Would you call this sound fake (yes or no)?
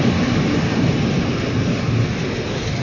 no